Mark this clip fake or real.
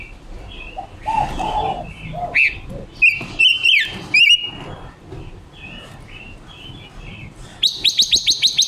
real